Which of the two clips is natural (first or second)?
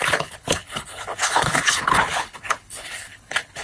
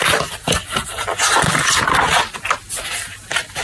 second